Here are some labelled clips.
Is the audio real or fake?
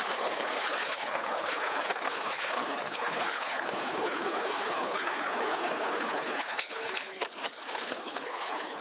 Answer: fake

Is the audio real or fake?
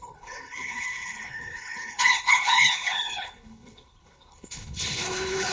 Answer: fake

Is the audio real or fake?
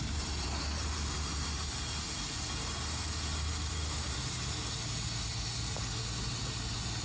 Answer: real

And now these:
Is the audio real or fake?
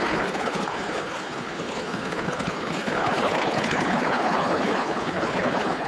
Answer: fake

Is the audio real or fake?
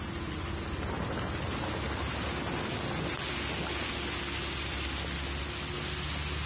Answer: real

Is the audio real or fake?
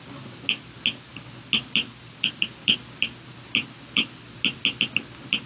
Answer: real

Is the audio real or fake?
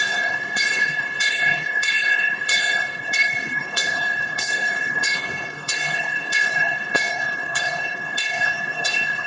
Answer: fake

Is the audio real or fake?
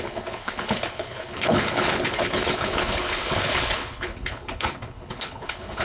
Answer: fake